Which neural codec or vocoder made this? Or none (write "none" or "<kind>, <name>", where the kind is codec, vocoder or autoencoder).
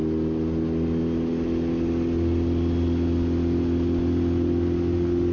none